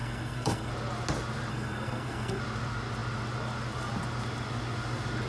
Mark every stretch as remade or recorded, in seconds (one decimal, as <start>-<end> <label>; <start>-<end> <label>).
0.0-0.7 remade; 0.7-1.5 recorded; 1.5-2.4 remade; 2.4-5.3 recorded